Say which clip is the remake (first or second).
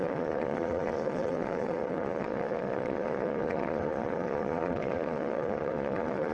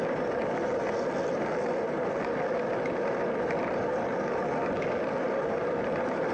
first